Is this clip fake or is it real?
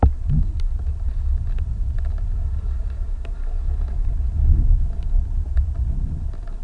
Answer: real